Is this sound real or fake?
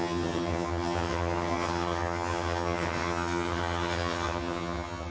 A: fake